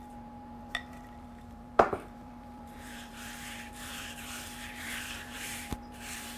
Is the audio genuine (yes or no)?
no